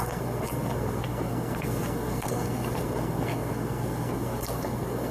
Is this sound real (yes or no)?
no